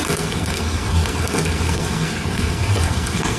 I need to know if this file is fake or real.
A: fake